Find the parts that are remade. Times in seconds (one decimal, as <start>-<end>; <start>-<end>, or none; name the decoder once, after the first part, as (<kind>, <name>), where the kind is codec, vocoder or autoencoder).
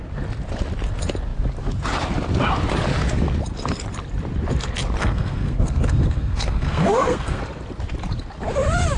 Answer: 5.0-7.4 (codec, SNAC)